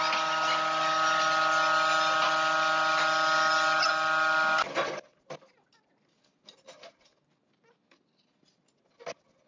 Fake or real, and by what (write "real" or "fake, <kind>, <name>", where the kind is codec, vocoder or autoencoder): real